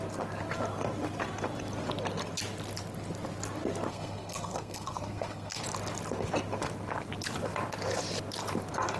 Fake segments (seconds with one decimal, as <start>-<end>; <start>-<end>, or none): 3.9-5.6